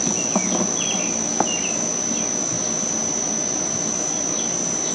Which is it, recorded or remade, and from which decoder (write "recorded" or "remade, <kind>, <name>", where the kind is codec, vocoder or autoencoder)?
recorded